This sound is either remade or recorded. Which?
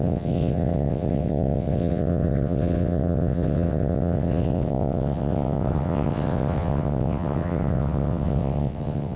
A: remade